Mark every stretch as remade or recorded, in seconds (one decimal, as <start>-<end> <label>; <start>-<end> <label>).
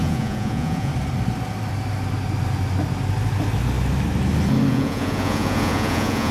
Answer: 0.0-0.9 remade; 0.9-4.7 recorded; 4.7-6.3 remade